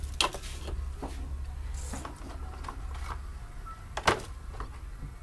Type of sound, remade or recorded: recorded